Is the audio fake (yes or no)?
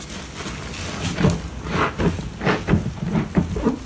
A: no